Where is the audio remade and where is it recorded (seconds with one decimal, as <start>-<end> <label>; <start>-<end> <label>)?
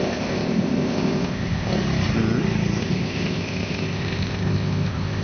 0.0-1.7 remade; 1.7-2.8 recorded; 2.8-5.2 remade